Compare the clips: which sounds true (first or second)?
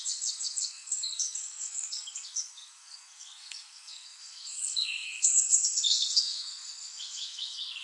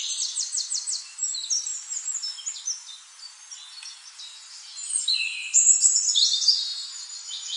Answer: second